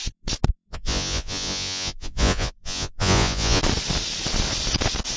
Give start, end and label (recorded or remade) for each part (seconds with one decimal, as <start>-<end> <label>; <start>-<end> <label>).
0.0-0.7 recorded; 0.7-3.6 remade; 3.6-5.2 recorded